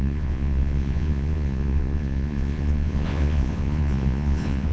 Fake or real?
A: fake